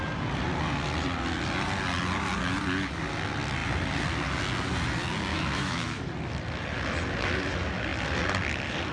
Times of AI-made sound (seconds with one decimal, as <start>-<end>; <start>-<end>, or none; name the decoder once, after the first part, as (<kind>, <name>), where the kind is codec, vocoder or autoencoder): 5.3-6.0 (autoencoder, DAC-VAE)